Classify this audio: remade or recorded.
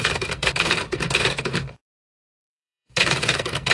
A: remade